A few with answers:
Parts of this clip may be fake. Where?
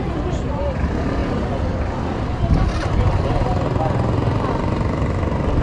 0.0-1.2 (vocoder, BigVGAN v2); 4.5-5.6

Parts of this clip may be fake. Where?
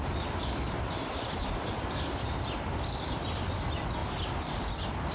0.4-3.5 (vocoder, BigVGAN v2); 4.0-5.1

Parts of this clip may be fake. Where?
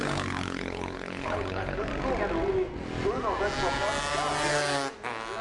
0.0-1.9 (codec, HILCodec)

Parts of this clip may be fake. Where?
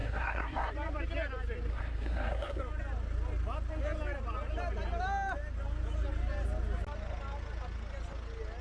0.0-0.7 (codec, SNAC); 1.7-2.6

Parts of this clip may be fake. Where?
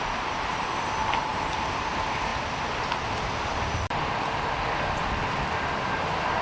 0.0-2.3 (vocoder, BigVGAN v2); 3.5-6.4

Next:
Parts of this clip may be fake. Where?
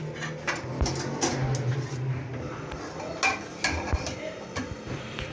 none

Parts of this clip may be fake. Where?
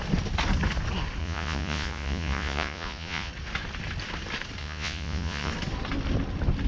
1.2-3.3 (vocoder, Vocos); 4.6-5.5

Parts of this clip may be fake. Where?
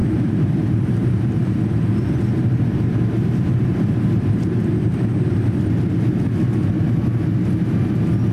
0.0-1.9 (vocoder, BigVGAN v2); 2.9-5.6